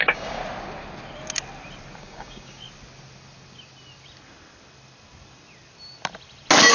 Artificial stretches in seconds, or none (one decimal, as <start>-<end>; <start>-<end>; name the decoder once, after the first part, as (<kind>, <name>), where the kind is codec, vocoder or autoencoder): 0.0-0.4 (codec, DAC); 2.0-2.6